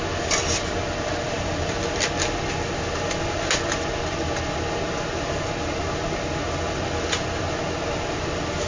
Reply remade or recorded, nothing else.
recorded